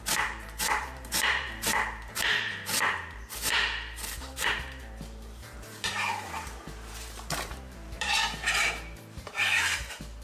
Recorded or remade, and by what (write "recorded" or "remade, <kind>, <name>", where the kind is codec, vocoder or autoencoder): remade, vocoder, BigVGAN v2